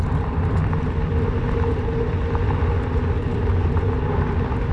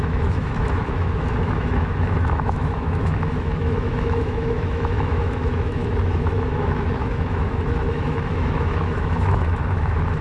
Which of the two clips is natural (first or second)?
first